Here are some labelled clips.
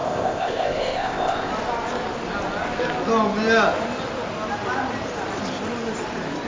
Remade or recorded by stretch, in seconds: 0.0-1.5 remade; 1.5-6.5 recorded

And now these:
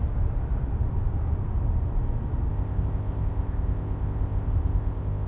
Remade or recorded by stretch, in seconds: 0.0-2.5 recorded; 2.5-5.3 remade

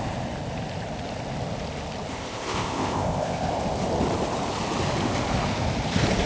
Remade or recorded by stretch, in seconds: 0.0-2.1 recorded; 2.1-3.5 remade; 3.5-6.3 recorded

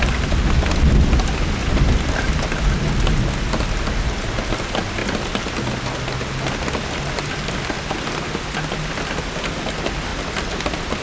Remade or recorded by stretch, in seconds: 0.0-11.0 recorded

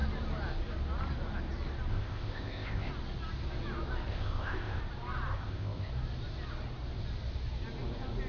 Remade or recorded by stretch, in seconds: 0.0-1.9 recorded; 1.9-2.9 remade; 2.9-4.1 recorded; 4.1-4.8 remade; 4.8-5.3 recorded; 5.3-5.9 remade; 5.9-8.3 recorded